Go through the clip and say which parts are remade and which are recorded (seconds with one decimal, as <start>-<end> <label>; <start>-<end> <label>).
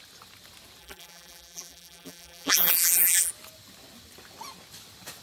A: 0.0-0.8 recorded; 0.8-3.3 remade; 3.3-5.2 recorded